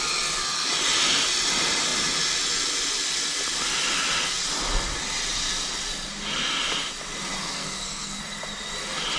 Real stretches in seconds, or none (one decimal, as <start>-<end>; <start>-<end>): 0.0-7.4; 8.2-9.2